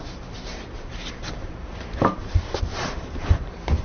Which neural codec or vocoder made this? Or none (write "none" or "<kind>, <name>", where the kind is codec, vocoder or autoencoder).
vocoder, BigVGAN v2